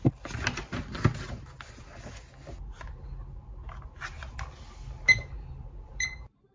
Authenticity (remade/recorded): recorded